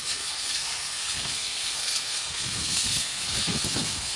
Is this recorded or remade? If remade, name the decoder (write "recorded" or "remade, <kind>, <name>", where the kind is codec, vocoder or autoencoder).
remade, codec, SNAC